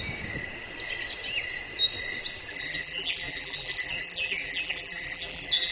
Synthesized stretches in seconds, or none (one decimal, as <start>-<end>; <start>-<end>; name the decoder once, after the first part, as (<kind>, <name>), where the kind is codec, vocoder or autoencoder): 2.5-5.7 (vocoder, BigVGAN v2)